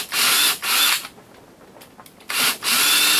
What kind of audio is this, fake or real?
real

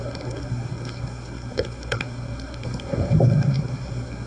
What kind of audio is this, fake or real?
fake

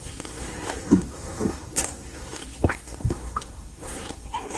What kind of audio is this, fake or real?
fake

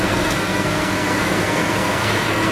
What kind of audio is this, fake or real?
fake